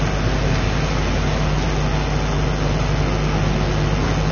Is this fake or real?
real